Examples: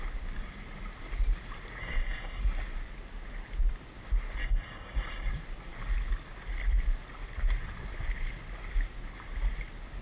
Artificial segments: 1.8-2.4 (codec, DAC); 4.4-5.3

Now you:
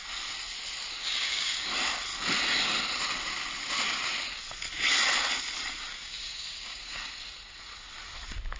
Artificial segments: 1.0-1.6 (codec, DAC); 5.9-7.0

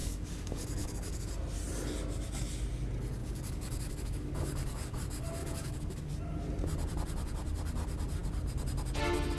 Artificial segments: 0.0-1.3 (codec, DAC); 3.2-5.0; 5.4-6.1